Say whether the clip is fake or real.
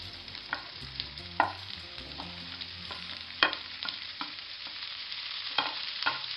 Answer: fake